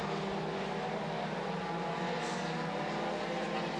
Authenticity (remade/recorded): recorded